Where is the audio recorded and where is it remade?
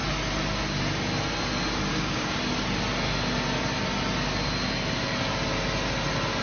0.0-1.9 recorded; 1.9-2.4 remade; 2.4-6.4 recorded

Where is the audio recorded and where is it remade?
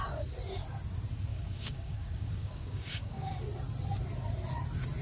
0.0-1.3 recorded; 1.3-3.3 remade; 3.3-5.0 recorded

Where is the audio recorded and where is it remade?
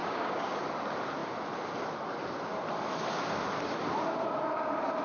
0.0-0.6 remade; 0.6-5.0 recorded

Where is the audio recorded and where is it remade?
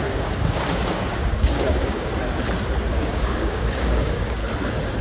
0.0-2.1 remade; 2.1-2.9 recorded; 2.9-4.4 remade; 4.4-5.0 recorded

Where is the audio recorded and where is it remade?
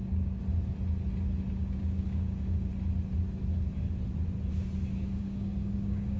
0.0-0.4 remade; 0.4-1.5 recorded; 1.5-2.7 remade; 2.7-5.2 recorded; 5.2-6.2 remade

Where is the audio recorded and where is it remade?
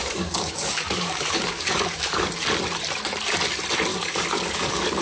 0.0-2.3 remade; 2.3-3.9 recorded; 3.9-5.0 remade